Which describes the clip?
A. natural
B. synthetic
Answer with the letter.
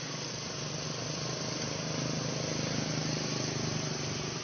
A